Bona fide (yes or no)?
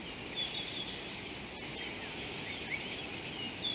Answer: yes